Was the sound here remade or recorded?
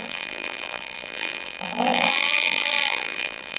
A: remade